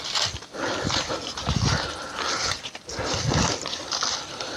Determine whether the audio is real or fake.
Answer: real